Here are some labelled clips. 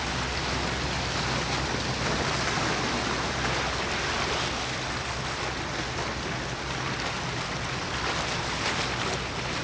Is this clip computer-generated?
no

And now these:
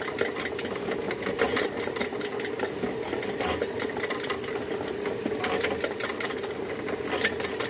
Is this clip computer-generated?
no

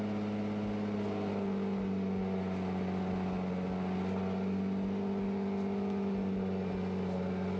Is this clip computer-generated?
no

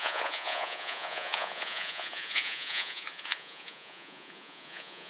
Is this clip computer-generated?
yes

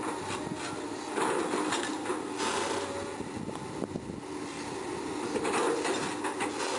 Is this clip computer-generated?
no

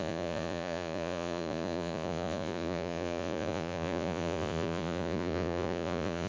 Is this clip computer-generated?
yes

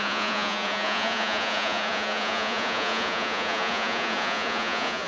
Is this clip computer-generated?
yes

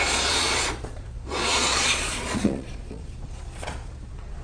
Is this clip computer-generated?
yes